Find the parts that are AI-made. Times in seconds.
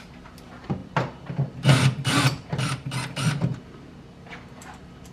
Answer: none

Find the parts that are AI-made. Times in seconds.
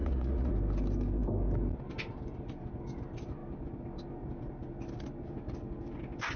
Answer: 0.0-0.5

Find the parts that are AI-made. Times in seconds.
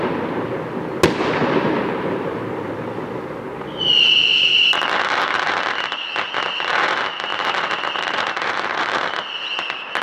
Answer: 1.4-2.7; 4.3-5.0; 7.3-9.3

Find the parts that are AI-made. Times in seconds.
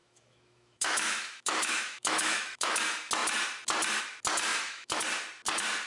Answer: 0.0-2.8; 4.5-5.0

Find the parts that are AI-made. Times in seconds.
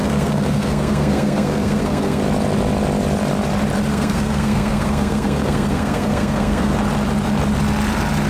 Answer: 0.0-2.2; 3.9-6.7